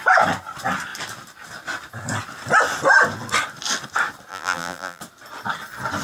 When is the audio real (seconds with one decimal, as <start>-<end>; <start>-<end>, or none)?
0.0-4.3; 5.0-6.0